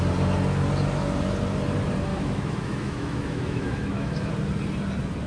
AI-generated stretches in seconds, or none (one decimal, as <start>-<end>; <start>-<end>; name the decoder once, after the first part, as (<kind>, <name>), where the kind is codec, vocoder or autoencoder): 2.1-4.3 (autoencoder, DAC-VAE)